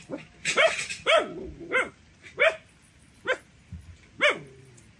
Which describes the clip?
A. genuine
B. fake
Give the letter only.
A